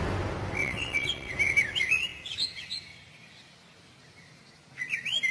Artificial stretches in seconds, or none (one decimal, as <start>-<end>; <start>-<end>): 0.6-1.3